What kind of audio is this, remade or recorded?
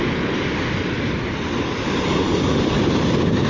recorded